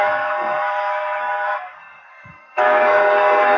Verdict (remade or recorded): remade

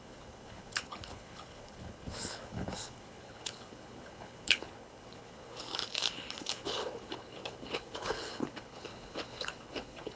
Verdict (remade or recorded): remade